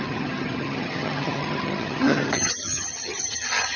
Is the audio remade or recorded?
remade